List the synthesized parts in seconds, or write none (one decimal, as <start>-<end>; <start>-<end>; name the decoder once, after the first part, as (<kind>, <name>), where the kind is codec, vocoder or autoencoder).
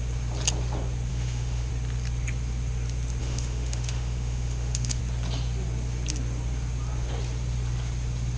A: 1.1-1.7 (autoencoder, DAC-VAE); 3.2-5.0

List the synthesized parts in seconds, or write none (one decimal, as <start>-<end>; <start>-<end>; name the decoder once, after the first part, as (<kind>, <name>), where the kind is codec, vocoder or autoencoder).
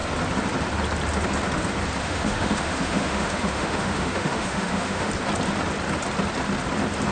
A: 2.0-5.1 (autoencoder, DAC-VAE)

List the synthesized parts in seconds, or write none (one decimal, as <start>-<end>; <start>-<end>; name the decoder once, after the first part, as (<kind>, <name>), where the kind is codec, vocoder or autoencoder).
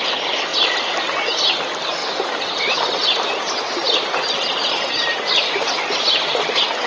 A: none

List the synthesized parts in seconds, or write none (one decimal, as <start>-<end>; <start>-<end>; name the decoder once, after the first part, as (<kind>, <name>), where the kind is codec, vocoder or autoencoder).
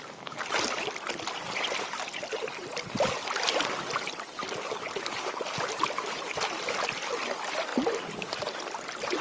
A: none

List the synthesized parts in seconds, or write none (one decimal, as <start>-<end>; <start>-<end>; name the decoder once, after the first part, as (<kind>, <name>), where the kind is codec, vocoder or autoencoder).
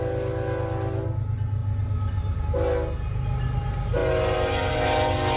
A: none